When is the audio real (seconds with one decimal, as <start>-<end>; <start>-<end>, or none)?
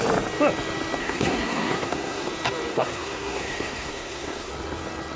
0.0-1.0; 2.3-2.7; 4.5-5.2